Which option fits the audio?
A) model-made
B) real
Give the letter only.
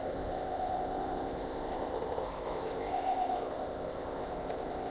A